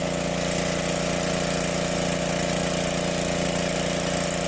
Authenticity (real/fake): real